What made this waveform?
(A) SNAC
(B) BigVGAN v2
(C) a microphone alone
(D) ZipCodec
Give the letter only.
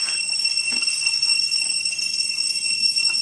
A